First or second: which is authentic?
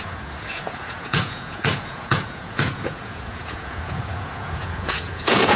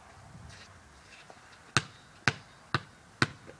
second